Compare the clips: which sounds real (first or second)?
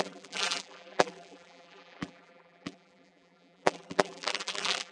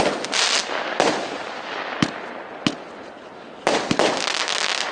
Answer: second